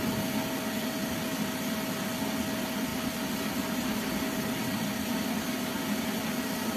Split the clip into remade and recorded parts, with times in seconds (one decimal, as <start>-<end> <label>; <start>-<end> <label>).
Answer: 0.0-6.8 recorded